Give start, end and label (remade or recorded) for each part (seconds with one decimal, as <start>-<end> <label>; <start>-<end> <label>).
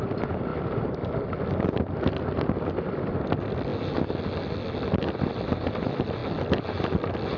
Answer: 0.0-3.7 remade; 3.7-5.2 recorded; 5.2-6.2 remade; 6.2-7.4 recorded